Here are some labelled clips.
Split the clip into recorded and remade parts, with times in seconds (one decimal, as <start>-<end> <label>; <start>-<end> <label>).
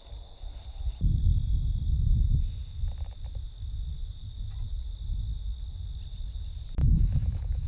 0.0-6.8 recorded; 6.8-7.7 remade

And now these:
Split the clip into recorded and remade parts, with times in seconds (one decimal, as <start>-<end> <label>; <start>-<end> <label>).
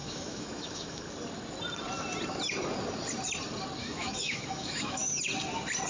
0.0-1.0 remade; 1.0-3.8 recorded; 3.8-5.1 remade; 5.1-5.9 recorded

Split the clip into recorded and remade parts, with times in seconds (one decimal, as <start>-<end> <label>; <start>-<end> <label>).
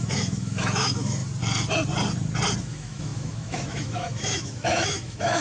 0.0-1.2 remade; 1.2-2.6 recorded; 2.6-5.4 remade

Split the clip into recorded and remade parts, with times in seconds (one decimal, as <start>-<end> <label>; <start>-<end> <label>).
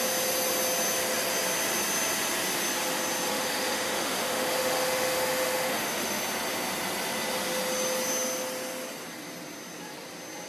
0.0-3.3 recorded; 3.3-6.2 remade; 6.2-10.5 recorded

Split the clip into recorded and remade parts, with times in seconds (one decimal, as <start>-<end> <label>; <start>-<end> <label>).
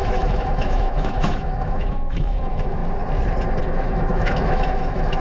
0.0-2.8 remade; 2.8-3.6 recorded; 3.6-5.2 remade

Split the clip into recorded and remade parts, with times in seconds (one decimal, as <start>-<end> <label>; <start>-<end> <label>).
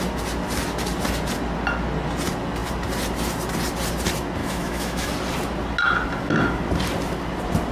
0.0-4.4 recorded; 4.4-5.1 remade; 5.1-7.7 recorded